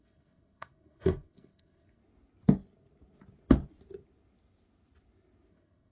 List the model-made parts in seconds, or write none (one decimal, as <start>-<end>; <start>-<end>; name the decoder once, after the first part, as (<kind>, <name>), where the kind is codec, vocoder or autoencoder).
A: 0.0-2.0 (codec, SNAC); 5.5-5.9